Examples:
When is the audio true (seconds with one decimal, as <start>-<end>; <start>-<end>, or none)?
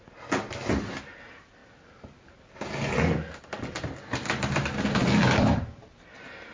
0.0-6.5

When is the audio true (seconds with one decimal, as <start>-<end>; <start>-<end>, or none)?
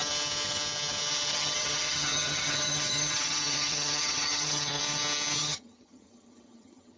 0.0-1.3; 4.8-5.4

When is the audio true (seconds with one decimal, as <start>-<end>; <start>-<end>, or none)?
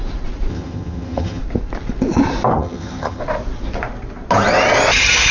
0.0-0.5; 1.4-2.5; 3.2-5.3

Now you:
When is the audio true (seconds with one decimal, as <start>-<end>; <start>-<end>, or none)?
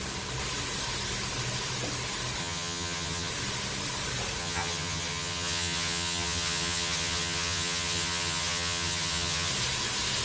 0.0-2.4; 3.3-4.4; 9.5-10.2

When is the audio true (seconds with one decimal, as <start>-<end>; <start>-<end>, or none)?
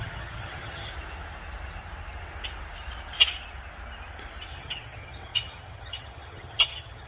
0.9-4.5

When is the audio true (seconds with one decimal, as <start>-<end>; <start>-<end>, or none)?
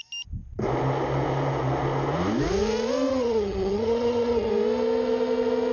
0.0-3.1; 4.5-5.7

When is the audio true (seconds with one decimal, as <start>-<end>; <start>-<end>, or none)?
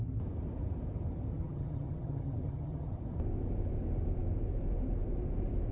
0.0-1.3; 3.0-5.7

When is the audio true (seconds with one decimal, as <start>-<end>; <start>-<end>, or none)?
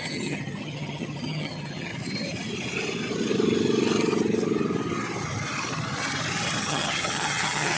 1.9-6.6